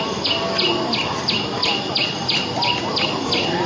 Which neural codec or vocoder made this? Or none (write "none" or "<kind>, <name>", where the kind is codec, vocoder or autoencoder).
none